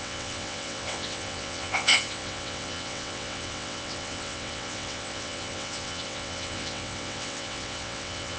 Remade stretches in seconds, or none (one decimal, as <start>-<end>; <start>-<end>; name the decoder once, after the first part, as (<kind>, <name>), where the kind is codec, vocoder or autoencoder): 0.0-8.4 (vocoder, WaveNeXt)